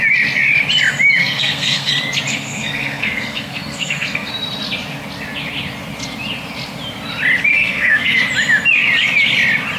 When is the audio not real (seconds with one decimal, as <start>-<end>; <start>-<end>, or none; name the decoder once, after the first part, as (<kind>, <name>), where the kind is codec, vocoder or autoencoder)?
1.2-1.9 (codec, SNAC); 2.3-4.3; 7.5-8.2